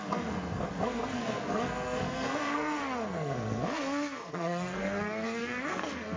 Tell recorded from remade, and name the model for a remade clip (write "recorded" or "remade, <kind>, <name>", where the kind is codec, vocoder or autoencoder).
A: remade, codec, SNAC